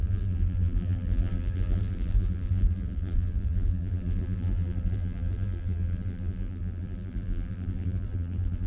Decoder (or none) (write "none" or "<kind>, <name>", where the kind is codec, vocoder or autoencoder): vocoder, BigVGAN v2